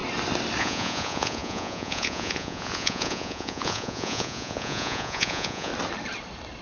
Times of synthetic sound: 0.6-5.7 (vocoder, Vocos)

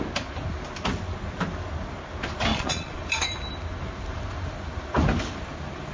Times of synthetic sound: 2.5-3.0 (vocoder, Vocos)

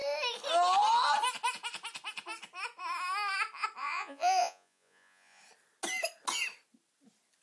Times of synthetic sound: 3.8-5.4 (vocoder, Vocos)